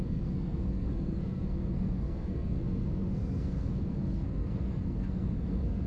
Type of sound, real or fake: fake